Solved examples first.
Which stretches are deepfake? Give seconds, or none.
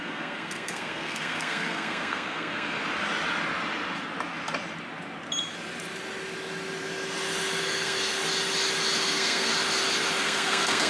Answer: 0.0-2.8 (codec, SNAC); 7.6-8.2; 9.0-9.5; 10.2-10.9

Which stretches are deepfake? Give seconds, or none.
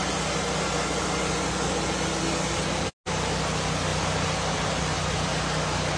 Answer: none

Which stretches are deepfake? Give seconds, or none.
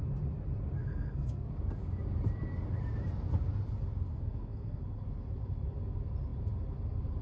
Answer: 0.8-1.5 (codec, SNAC); 4.1-4.8